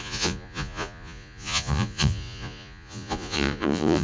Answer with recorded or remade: remade